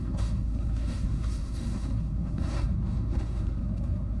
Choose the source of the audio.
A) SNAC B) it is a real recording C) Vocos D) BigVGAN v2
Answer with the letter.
A